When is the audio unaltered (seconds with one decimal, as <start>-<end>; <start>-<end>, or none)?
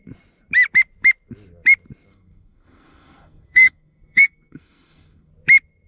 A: 0.0-2.1; 5.3-5.9